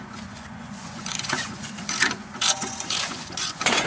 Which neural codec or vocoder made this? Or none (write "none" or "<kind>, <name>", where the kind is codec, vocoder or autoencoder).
vocoder, Vocos